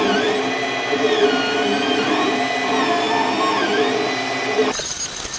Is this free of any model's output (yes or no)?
yes